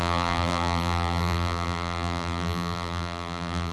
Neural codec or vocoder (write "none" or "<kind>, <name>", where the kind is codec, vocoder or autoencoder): vocoder, BigVGAN v2